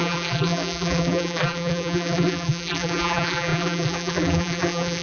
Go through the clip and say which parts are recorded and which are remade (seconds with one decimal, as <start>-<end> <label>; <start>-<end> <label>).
0.0-5.0 remade